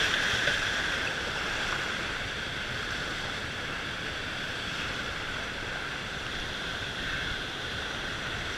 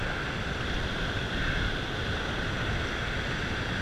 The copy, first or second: first